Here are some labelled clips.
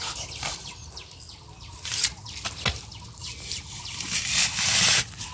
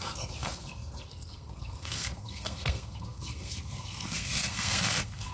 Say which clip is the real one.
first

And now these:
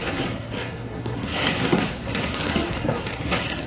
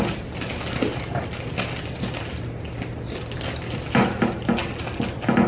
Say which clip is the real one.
second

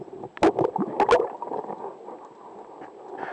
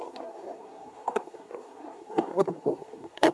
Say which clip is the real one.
first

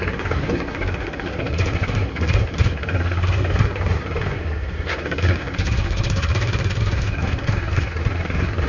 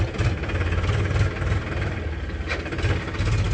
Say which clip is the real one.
second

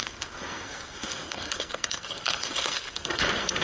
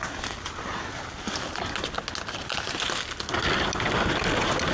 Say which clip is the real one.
second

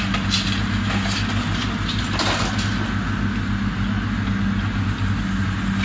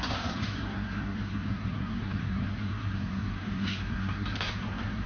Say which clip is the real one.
first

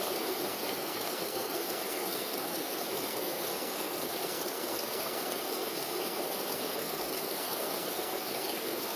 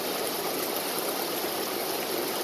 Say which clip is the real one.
second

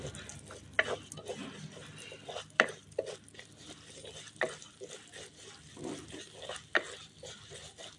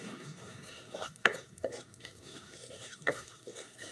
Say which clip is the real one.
first